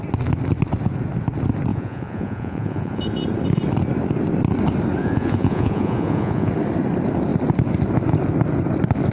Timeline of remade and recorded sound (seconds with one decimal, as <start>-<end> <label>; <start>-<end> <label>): 0.0-1.7 recorded; 1.7-3.0 remade; 3.0-5.0 recorded; 5.0-6.5 remade; 6.5-9.1 recorded